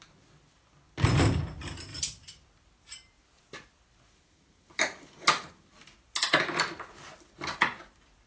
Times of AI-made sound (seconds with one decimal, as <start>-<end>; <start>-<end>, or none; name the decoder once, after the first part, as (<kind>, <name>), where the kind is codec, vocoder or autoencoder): none